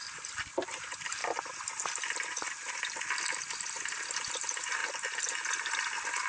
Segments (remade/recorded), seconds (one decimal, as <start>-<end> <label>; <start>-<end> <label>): 0.0-1.2 remade; 1.2-3.4 recorded; 3.4-4.8 remade; 4.8-5.5 recorded; 5.5-6.3 remade